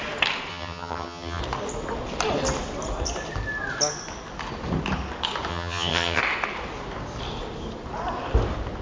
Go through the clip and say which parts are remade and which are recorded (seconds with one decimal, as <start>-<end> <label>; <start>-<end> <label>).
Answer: 0.0-0.5 recorded; 0.5-1.4 remade; 1.4-5.5 recorded; 5.5-6.2 remade; 6.2-8.8 recorded